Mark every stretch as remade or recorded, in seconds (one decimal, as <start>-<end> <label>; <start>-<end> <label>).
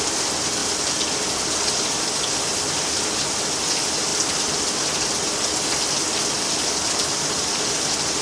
0.0-8.2 recorded